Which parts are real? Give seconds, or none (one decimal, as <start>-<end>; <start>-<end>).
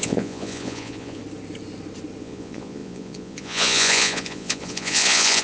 1.2-2.2